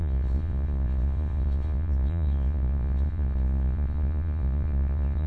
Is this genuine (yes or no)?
no